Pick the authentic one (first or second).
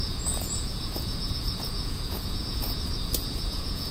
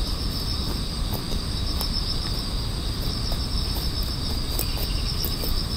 second